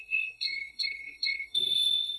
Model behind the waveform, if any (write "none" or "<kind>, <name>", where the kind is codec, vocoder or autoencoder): codec, SNAC